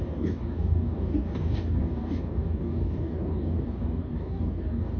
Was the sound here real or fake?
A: fake